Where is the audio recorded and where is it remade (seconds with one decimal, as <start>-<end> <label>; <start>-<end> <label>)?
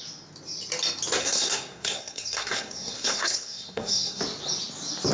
0.0-1.2 recorded; 1.2-4.2 remade; 4.2-5.1 recorded